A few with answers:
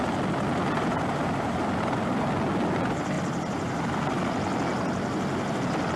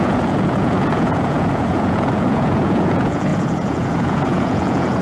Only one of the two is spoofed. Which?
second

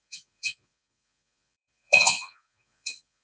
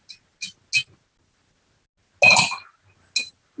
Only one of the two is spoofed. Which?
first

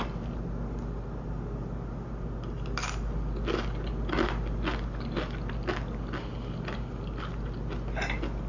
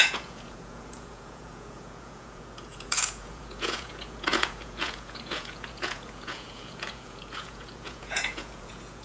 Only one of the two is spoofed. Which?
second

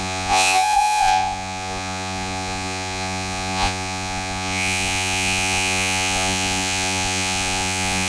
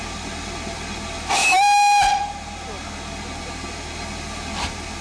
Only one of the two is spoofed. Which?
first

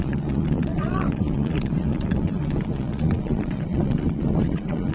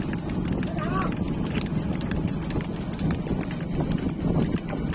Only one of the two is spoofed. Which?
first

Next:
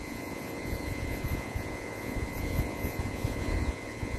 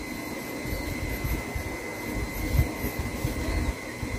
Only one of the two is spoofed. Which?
first